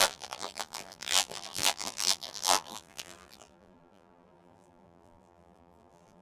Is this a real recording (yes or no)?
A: no